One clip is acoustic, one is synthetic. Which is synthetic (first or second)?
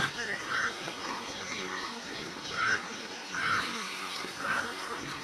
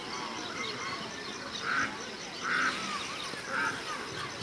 first